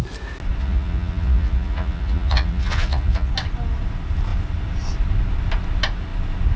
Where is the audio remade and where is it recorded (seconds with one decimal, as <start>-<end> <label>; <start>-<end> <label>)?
0.0-0.6 recorded; 0.6-3.3 remade; 3.3-6.6 recorded